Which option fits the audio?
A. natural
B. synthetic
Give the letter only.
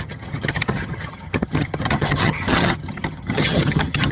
B